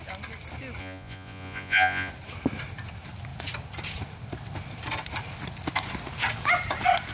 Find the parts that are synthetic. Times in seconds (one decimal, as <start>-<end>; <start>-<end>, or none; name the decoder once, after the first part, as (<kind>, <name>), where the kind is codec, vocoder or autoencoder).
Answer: 0.8-2.1 (vocoder, Vocos)